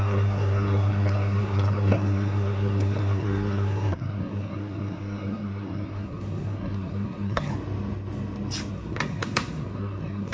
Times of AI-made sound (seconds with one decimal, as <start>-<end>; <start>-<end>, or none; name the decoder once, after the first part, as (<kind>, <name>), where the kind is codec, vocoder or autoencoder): 0.0-7.5 (codec, SNAC); 8.7-10.3